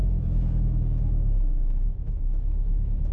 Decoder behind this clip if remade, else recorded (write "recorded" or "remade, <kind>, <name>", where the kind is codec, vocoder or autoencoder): remade, autoencoder, DAC-VAE